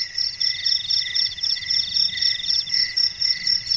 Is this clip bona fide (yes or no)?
yes